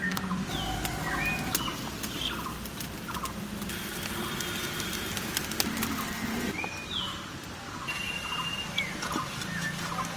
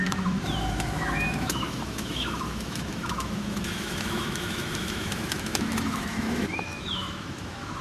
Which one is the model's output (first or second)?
second